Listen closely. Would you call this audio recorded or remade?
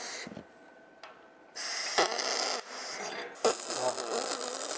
recorded